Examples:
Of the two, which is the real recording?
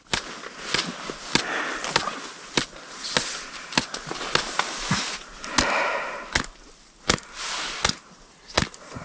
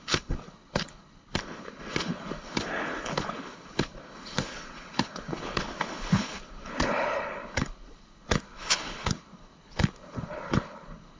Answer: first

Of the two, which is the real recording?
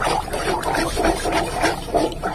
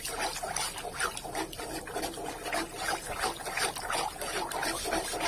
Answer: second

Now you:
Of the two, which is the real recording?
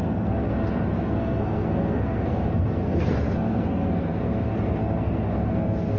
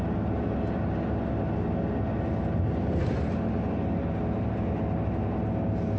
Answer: second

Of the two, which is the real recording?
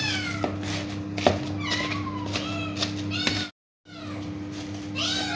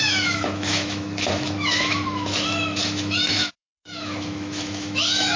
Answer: first